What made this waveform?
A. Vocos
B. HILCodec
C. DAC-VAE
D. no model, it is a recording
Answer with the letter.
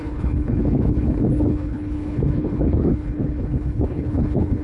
B